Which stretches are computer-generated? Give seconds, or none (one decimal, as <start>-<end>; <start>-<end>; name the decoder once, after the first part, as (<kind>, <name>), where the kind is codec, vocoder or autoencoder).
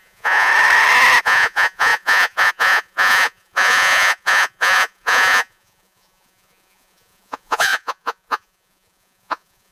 0.0-0.5 (vocoder, Vocos); 1.2-9.7